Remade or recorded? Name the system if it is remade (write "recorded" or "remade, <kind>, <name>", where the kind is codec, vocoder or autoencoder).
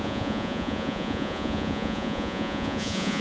remade, vocoder, Vocos